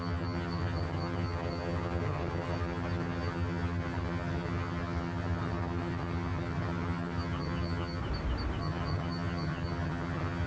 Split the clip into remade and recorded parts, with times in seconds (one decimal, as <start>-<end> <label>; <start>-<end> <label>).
0.0-8.0 remade; 8.0-8.6 recorded; 8.6-10.5 remade